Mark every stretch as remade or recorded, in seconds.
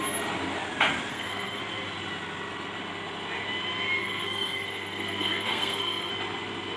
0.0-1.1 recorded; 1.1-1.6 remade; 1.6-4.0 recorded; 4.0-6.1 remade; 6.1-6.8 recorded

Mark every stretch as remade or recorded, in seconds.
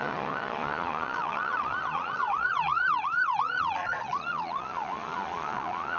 0.0-6.0 remade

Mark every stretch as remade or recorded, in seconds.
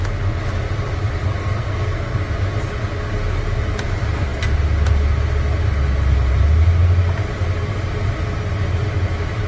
0.0-1.4 recorded; 1.4-2.2 remade; 2.2-9.5 recorded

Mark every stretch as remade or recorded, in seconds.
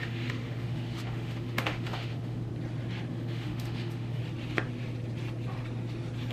0.0-2.5 remade; 2.5-3.1 recorded; 3.1-4.2 remade; 4.2-6.3 recorded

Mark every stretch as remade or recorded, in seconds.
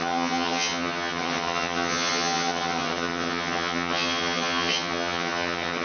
0.0-5.8 remade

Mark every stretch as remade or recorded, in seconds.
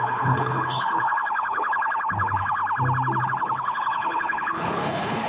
0.0-2.6 remade; 2.6-3.2 recorded; 3.2-5.3 remade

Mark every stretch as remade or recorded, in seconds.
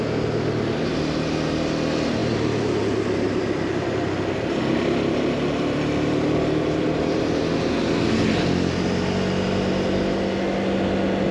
0.0-2.2 recorded; 2.2-7.2 remade; 7.2-11.3 recorded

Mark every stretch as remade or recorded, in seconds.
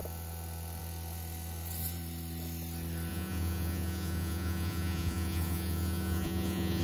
0.0-3.1 recorded; 3.1-6.8 remade